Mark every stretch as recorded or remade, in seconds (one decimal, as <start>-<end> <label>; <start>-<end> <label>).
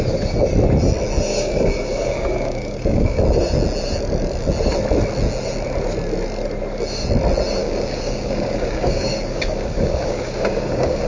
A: 0.0-1.3 recorded; 1.3-3.2 remade; 3.2-7.6 recorded; 7.6-11.1 remade